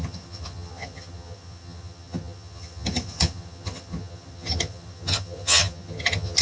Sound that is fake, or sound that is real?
fake